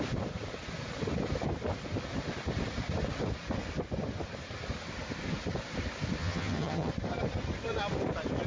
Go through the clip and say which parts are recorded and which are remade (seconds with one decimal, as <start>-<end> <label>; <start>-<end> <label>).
0.0-6.2 recorded; 6.2-6.9 remade; 6.9-8.5 recorded